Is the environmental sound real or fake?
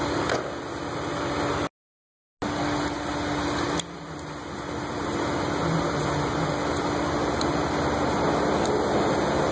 real